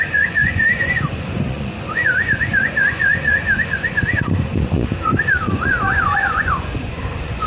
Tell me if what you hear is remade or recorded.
remade